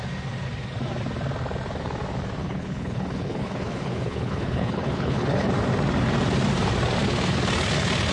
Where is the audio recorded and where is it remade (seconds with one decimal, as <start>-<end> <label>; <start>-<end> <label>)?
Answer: 0.0-2.4 recorded; 2.4-5.5 remade; 5.5-8.1 recorded